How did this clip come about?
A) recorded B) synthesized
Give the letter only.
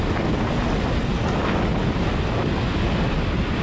A